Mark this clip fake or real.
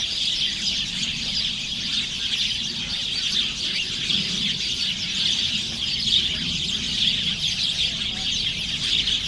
real